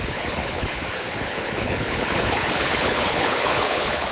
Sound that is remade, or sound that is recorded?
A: remade